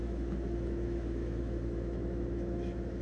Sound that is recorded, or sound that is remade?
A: remade